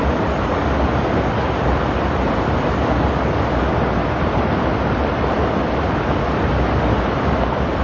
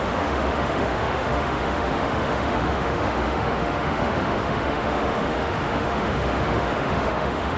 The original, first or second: first